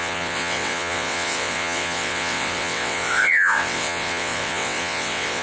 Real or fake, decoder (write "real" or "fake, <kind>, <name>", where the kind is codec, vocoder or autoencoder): fake, vocoder, WaveNeXt